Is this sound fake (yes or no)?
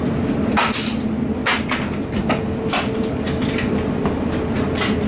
no